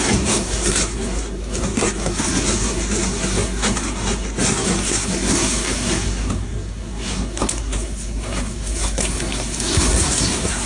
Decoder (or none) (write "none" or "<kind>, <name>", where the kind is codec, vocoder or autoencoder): codec, SNAC